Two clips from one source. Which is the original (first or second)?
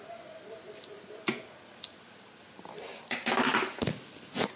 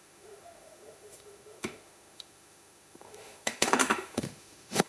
first